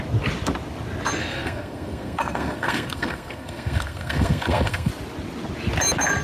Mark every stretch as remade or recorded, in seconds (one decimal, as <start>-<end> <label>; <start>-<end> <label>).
0.0-1.2 recorded; 1.2-4.9 remade; 4.9-6.2 recorded